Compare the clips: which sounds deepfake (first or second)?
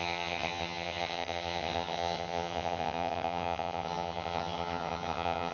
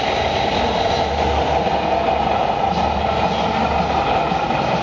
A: first